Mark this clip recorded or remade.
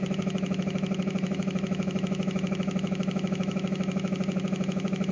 remade